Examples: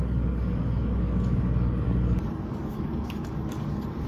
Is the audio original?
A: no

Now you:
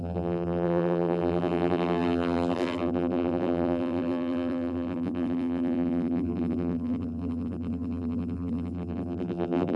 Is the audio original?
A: no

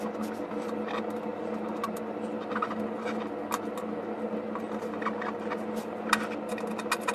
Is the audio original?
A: yes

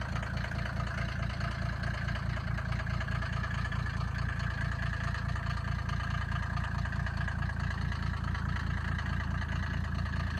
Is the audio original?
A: yes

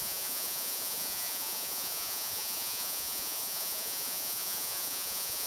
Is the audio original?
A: no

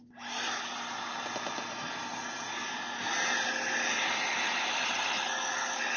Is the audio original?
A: yes